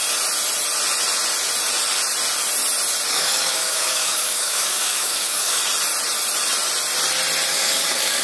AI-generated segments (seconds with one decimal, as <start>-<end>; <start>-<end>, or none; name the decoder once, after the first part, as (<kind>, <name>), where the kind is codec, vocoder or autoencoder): 3.1-5.6 (codec, DAC); 7.5-8.2